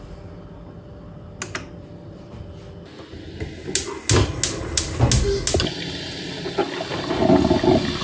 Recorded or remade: recorded